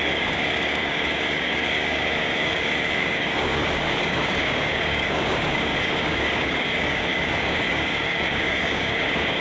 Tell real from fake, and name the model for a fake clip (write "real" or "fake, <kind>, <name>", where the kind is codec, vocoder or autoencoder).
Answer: fake, codec, DAC